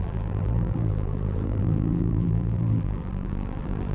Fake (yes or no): yes